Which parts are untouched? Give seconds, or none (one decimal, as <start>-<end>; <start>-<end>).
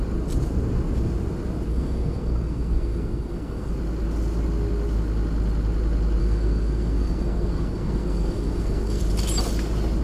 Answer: 0.0-1.7; 3.7-6.2; 9.0-10.0